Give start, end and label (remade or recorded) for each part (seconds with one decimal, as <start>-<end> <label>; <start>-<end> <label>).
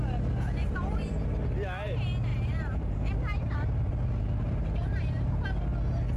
0.0-0.6 recorded; 0.6-1.1 remade; 1.1-2.3 recorded; 2.3-3.9 remade; 3.9-4.8 recorded; 4.8-5.3 remade; 5.3-6.2 recorded